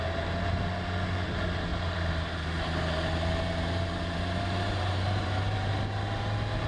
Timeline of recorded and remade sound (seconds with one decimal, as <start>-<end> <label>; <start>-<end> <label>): 0.0-1.7 recorded; 1.7-5.7 remade; 5.7-6.7 recorded